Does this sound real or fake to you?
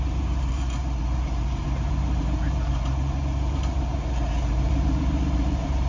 fake